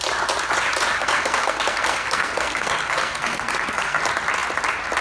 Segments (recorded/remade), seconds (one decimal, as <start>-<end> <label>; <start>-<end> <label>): 0.0-1.0 recorded; 1.0-4.0 remade; 4.0-5.0 recorded